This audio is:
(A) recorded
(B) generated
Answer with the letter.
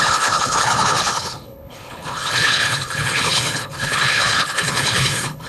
B